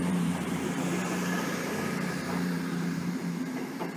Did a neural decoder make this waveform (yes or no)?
yes